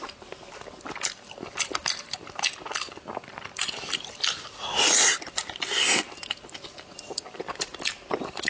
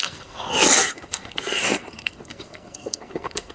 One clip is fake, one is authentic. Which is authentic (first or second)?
first